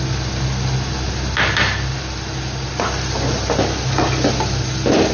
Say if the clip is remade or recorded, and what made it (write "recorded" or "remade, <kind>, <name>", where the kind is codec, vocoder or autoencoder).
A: recorded